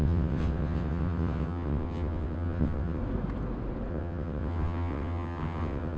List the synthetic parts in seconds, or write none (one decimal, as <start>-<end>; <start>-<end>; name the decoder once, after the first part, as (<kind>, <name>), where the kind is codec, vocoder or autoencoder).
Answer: 0.0-3.0 (vocoder, WaveNeXt); 3.9-6.0